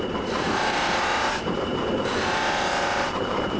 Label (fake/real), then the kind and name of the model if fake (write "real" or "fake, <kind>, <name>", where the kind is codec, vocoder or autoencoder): fake, vocoder, BigVGAN v2